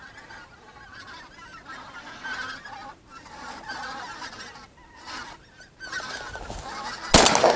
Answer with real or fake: real